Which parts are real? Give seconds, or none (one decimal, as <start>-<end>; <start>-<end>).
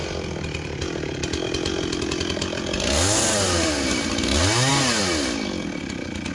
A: 0.0-6.3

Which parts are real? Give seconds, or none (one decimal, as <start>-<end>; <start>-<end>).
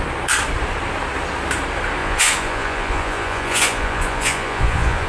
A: 0.0-2.0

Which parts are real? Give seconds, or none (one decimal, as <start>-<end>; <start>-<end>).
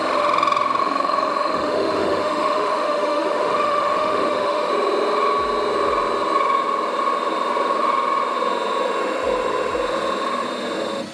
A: 0.0-0.8; 4.7-11.1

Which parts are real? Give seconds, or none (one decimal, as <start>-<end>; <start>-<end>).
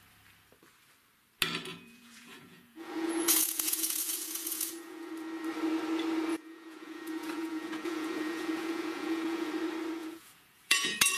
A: 0.0-1.7; 5.1-6.3; 9.5-10.0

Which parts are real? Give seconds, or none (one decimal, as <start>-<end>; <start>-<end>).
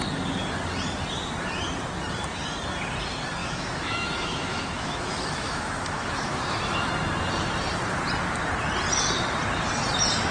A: 0.0-3.4; 6.9-10.3